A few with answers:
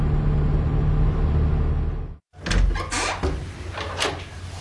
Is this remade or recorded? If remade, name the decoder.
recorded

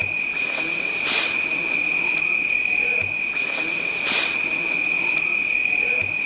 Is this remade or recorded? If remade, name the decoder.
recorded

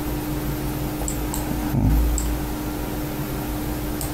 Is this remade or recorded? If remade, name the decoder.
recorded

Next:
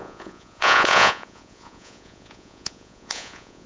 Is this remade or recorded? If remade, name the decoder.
remade, vocoder, Vocos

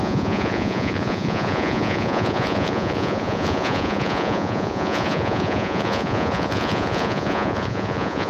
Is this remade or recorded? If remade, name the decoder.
remade, vocoder, Vocos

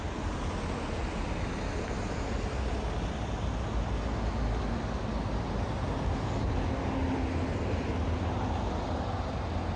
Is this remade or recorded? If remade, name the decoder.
recorded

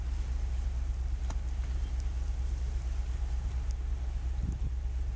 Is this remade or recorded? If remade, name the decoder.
recorded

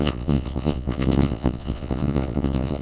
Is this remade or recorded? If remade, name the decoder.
remade, vocoder, Vocos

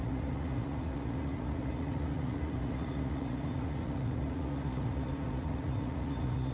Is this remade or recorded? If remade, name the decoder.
remade, vocoder, Vocos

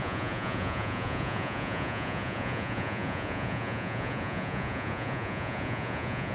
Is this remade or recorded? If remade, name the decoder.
remade, vocoder, Vocos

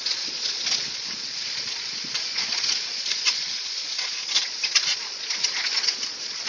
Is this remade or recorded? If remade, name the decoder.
remade, vocoder, Vocos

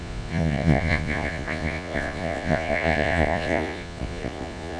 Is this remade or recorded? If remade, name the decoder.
remade, vocoder, Vocos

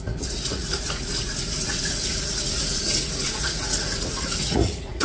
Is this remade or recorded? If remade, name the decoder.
remade, vocoder, Vocos